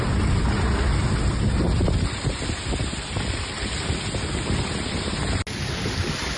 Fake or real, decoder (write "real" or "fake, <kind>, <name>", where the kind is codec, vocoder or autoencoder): real